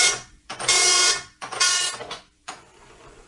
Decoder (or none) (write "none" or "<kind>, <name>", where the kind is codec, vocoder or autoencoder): vocoder, Vocos